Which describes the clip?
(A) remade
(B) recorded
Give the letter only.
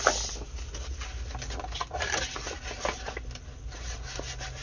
B